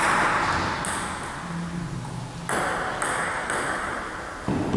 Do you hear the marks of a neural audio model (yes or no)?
no